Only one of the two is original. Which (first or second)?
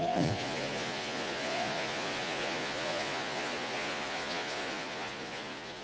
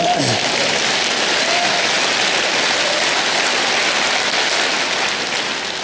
second